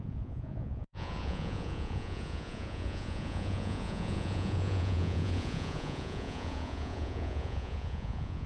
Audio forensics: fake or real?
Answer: fake